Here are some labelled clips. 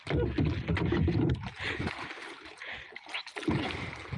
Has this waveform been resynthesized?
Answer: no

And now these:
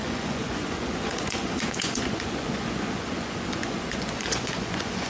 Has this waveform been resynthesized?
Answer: yes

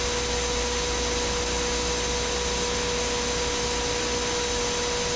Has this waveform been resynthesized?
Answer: no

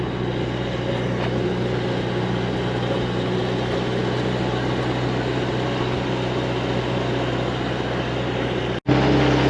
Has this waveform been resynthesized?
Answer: no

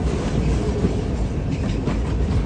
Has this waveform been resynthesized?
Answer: no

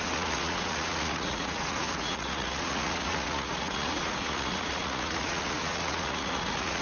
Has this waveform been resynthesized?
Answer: yes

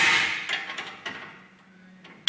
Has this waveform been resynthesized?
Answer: no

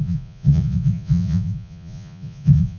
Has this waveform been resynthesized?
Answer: yes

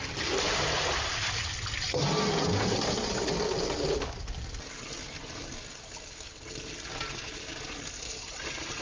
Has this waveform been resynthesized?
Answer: no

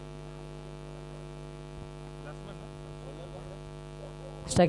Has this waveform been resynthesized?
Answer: no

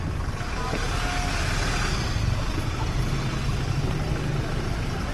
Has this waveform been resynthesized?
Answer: no